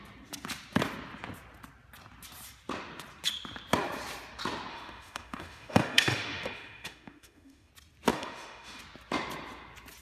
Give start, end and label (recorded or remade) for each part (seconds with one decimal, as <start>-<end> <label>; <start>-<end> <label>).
0.0-4.7 recorded; 4.7-7.7 remade; 7.7-8.1 recorded; 8.1-8.8 remade; 8.8-10.0 recorded